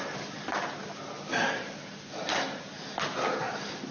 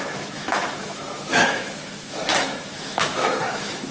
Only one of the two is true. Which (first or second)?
first